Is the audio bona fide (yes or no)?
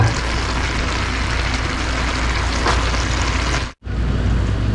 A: yes